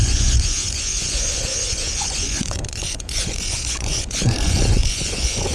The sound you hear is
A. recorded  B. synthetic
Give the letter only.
B